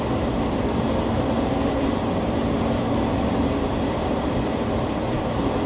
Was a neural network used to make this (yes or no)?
no